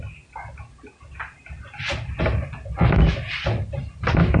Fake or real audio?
real